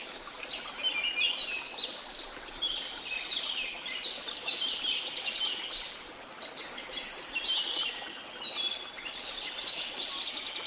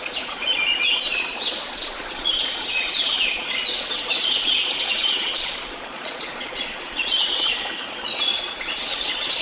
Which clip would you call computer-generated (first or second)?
second